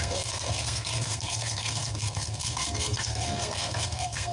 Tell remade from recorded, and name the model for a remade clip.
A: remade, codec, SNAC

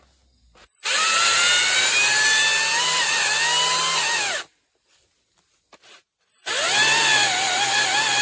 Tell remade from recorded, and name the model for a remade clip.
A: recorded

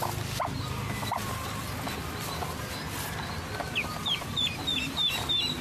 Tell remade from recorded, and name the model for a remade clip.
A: recorded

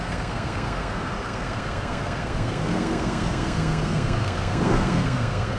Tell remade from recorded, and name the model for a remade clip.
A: remade, codec, SNAC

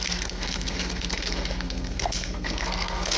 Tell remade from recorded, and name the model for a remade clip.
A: remade, codec, SNAC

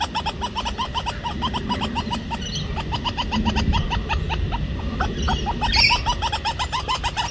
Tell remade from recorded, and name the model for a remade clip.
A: recorded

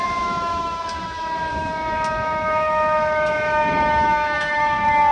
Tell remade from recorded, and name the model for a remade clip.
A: remade, autoencoder, DAC-VAE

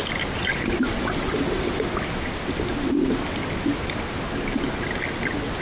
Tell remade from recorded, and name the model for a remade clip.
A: recorded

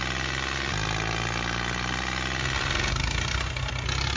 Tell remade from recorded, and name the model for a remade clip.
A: recorded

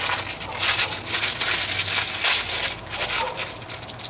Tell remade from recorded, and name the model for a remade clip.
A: recorded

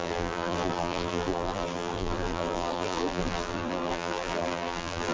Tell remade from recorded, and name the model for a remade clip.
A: remade, vocoder, BigVGAN v2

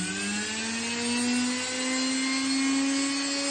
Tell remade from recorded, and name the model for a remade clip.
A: recorded